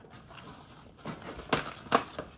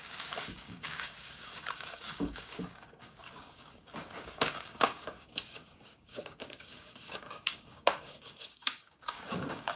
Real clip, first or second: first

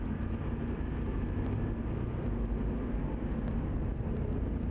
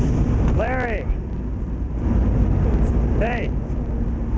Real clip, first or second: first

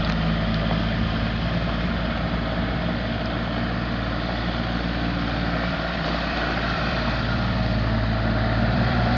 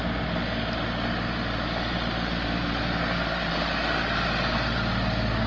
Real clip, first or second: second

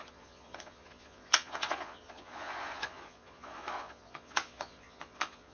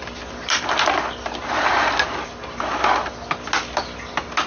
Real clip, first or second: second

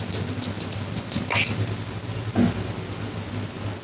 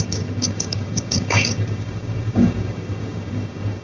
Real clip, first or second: first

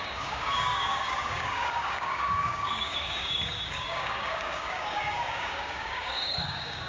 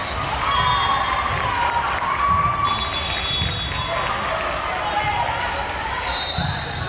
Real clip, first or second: second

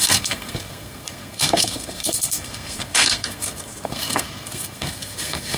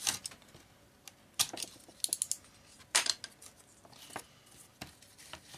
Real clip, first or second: second